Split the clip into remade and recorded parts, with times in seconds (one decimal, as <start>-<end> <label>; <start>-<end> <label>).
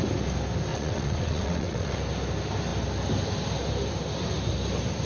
0.0-0.7 recorded; 0.7-2.0 remade; 2.0-5.1 recorded